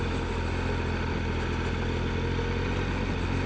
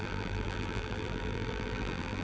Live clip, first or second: first